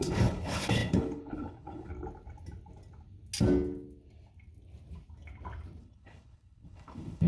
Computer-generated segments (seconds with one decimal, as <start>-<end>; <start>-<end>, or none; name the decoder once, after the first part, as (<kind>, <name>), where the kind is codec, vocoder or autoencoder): 0.0-1.9 (codec, HILCodec); 5.8-7.3